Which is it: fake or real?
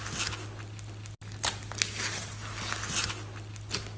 real